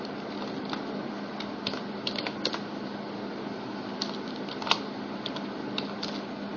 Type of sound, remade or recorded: recorded